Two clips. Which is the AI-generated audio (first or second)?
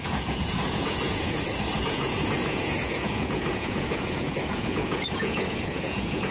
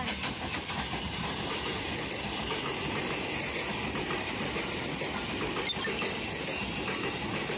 first